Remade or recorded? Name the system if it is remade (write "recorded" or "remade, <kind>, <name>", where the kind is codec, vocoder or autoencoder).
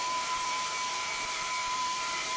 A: remade, vocoder, BigVGAN v2